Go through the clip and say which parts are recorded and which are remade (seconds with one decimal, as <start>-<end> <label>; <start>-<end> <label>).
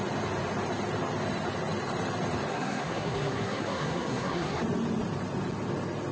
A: 0.0-2.5 recorded; 2.5-4.6 remade; 4.6-6.1 recorded